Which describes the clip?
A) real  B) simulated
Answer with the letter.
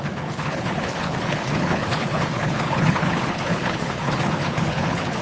B